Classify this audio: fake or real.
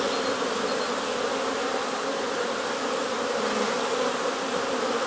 real